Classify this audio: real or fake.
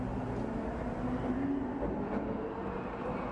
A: real